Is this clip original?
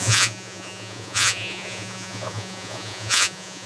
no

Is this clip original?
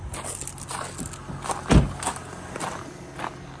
yes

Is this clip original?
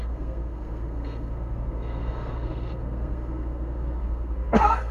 no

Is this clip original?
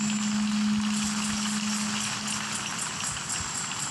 yes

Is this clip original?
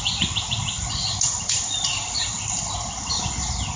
yes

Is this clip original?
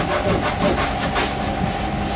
yes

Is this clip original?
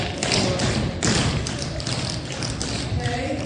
yes